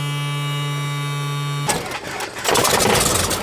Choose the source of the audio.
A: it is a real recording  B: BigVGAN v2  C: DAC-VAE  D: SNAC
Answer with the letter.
A